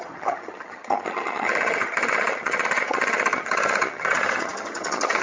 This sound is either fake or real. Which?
fake